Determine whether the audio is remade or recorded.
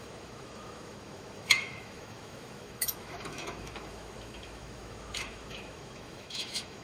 remade